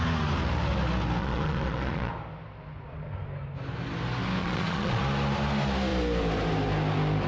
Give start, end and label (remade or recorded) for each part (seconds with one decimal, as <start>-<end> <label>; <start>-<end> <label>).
0.0-1.2 recorded; 1.2-2.1 remade; 2.1-4.4 recorded; 4.4-5.0 remade; 5.0-7.3 recorded